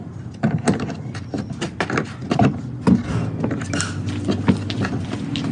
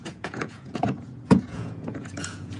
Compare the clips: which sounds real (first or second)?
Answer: first